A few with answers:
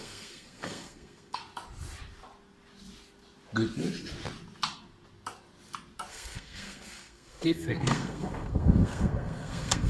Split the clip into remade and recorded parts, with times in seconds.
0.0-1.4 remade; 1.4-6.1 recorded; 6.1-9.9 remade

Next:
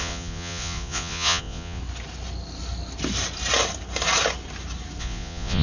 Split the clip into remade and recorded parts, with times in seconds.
0.0-1.8 remade; 1.8-5.0 recorded; 5.0-5.6 remade

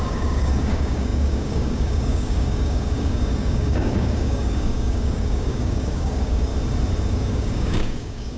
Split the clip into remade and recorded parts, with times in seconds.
0.0-6.5 remade; 6.5-7.1 recorded; 7.1-8.4 remade

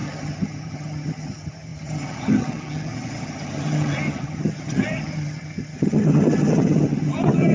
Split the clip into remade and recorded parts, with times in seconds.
0.0-7.5 remade